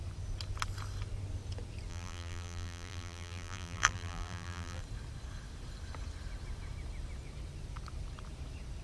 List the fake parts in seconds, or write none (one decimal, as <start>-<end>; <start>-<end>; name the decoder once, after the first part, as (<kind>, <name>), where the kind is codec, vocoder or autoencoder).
1.9-4.8 (vocoder, BigVGAN v2)